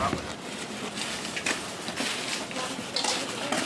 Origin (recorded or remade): recorded